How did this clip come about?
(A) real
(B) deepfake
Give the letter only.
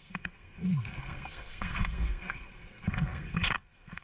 B